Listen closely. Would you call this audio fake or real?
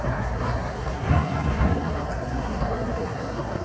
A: fake